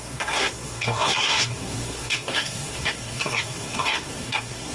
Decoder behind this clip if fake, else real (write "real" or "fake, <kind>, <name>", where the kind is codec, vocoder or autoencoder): fake, codec, SNAC